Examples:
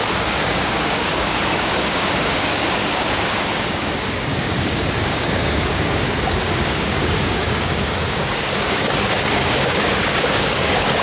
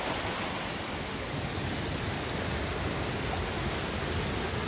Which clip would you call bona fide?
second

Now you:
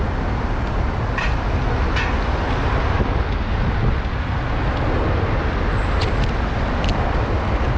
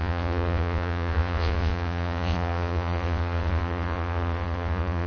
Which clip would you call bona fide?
first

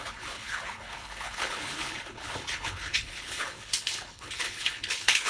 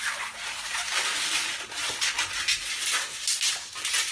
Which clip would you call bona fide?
second